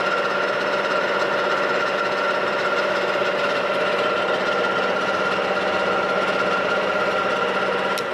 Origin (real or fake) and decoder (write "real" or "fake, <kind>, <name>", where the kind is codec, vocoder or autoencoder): real